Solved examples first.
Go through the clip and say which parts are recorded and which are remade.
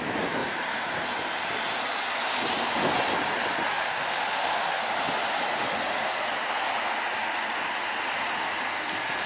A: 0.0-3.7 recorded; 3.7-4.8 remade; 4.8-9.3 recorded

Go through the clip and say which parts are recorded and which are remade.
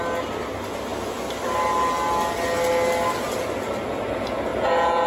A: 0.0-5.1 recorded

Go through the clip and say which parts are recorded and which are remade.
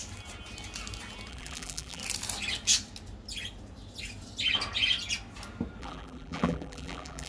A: 0.0-1.3 recorded; 1.3-2.0 remade; 2.0-5.8 recorded; 5.8-7.3 remade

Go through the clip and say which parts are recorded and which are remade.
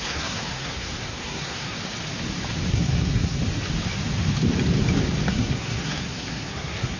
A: 0.0-1.8 remade; 1.8-2.7 recorded; 2.7-3.4 remade; 3.4-5.3 recorded; 5.3-7.0 remade